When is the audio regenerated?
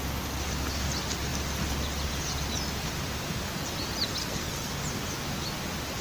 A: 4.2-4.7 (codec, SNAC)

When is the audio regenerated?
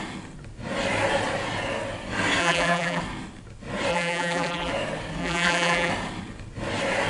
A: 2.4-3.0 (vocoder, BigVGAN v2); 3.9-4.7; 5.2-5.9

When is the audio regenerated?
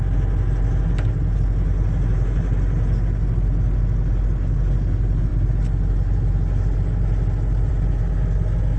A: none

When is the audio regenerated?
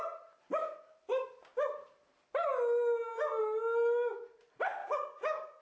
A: 4.8-5.6 (codec, DAC)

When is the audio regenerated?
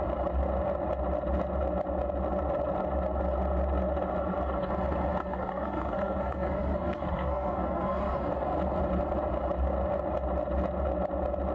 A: 5.3-8.3 (codec, SNAC)